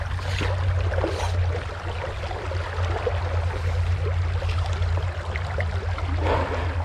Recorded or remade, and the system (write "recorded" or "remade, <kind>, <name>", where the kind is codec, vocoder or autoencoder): recorded